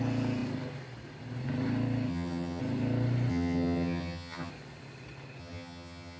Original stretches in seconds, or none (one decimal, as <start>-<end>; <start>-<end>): 0.0-2.1; 2.6-3.3; 4.5-5.4